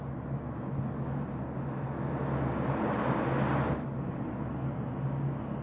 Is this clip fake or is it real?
real